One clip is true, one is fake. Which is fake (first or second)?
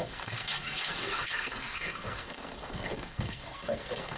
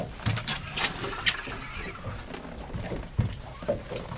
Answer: first